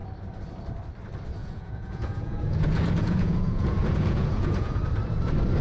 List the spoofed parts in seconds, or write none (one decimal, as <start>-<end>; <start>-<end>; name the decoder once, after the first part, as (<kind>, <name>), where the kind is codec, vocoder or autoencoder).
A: 1.4-4.8 (vocoder, Vocos)